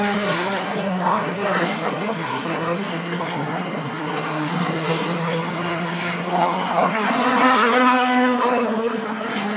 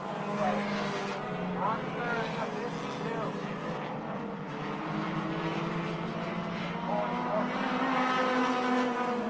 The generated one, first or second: first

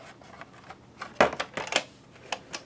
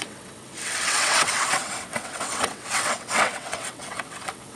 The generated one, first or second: second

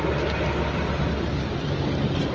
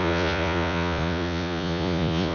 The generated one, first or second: second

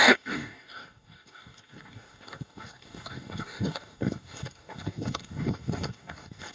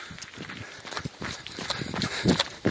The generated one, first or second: first